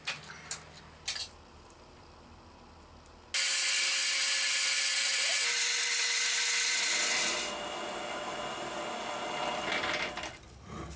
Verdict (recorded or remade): recorded